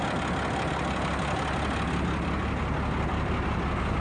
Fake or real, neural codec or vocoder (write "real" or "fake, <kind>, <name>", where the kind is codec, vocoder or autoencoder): real